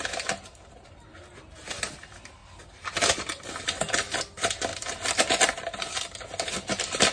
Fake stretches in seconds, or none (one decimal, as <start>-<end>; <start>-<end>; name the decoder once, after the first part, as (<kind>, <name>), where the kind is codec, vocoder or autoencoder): none